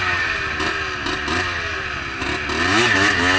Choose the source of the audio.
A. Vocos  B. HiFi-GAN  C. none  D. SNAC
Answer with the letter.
C